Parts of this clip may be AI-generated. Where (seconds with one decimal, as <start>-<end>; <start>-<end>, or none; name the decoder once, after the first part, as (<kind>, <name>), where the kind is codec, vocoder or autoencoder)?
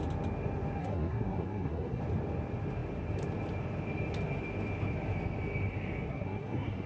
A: 0.8-2.0 (codec, SNAC); 6.1-6.9